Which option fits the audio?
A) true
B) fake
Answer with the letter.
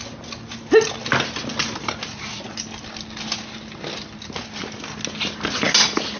A